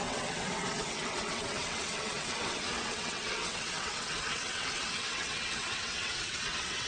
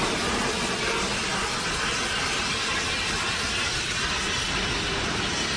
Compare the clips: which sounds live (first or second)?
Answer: second